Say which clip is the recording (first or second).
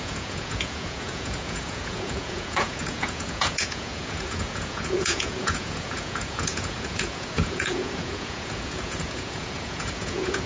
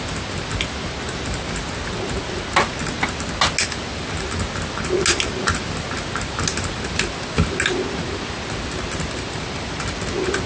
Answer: second